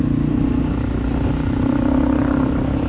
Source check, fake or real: real